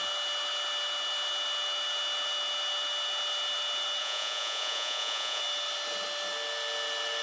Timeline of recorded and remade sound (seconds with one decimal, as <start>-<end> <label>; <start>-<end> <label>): 0.0-4.0 recorded; 4.0-5.4 remade; 5.4-7.2 recorded